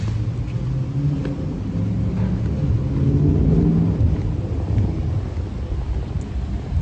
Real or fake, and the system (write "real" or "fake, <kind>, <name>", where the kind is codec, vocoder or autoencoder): real